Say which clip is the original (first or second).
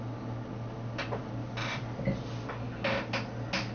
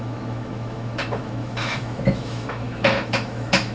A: first